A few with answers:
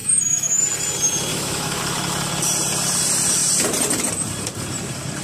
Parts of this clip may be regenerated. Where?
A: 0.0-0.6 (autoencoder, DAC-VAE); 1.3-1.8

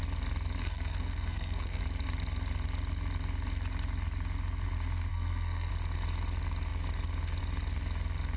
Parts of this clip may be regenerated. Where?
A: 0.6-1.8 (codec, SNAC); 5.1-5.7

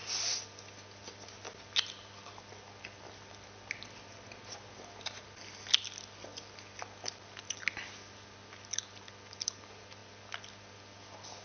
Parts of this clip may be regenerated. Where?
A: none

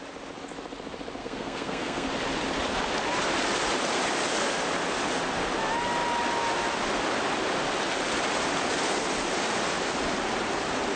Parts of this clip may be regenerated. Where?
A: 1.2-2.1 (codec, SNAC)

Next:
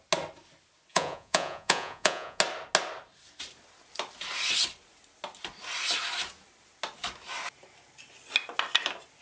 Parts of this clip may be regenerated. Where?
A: 0.9-2.4 (vocoder, Vocos)